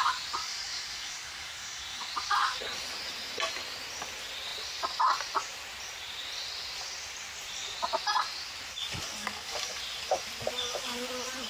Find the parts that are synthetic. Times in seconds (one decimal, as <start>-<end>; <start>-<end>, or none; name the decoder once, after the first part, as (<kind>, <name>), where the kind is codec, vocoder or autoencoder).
0.4-2.1 (codec, DAC); 9.2-9.8